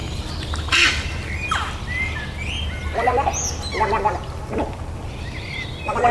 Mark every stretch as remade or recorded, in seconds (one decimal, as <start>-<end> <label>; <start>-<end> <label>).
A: 0.0-6.1 recorded